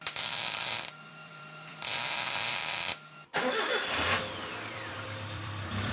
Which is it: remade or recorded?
remade